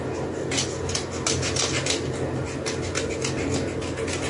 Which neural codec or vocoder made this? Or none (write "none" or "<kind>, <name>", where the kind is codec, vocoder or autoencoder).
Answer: none